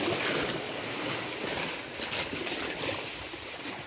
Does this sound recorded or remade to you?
recorded